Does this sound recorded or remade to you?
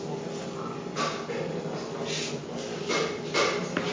recorded